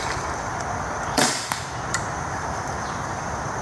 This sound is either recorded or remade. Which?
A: remade